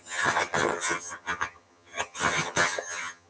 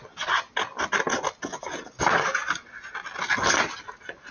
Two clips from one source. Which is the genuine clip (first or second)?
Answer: second